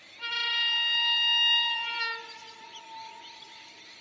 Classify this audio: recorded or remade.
recorded